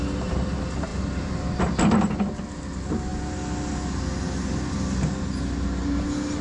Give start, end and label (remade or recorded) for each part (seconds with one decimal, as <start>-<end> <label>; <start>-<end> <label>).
0.0-6.4 recorded